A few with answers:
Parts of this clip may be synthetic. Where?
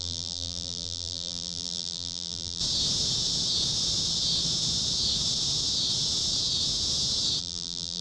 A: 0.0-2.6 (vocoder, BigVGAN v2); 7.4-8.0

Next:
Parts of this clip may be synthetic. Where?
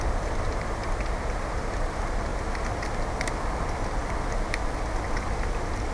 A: 0.0-0.8 (vocoder, BigVGAN v2); 1.5-2.3